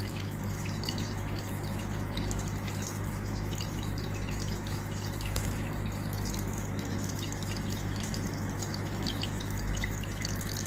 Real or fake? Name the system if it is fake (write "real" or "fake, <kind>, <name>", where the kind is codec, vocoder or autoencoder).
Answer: fake, autoencoder, DAC-VAE